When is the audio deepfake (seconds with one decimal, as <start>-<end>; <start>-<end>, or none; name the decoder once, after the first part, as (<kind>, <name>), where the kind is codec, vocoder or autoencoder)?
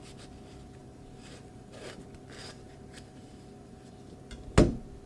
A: 0.8-2.0 (vocoder, BigVGAN v2); 2.4-4.0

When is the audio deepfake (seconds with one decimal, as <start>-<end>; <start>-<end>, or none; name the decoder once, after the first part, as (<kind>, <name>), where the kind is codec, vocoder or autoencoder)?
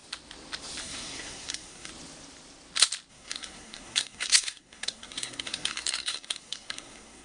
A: 0.8-1.9 (codec, SNAC); 3.1-7.2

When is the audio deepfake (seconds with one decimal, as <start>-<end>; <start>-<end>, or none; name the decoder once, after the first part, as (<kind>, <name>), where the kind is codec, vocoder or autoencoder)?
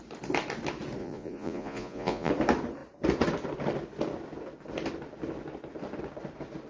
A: 1.0-2.3 (vocoder, Vocos)